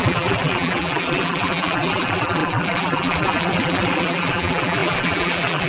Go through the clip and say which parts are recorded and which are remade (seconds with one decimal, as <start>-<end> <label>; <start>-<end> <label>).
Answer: 0.0-5.7 remade